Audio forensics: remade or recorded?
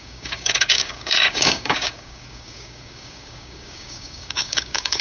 remade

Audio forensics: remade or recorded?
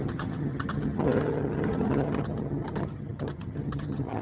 remade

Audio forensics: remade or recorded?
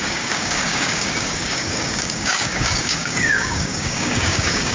remade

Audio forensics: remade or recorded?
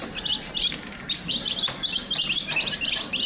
recorded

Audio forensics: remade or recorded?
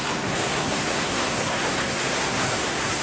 remade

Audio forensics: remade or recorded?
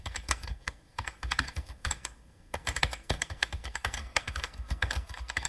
remade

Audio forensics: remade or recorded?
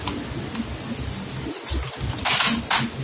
recorded